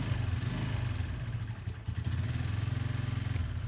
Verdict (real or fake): real